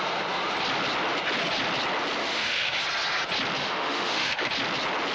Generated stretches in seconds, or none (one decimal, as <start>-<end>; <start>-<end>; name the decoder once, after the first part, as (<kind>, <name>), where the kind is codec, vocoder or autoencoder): 2.2-2.8 (autoencoder, DAC-VAE); 3.6-4.5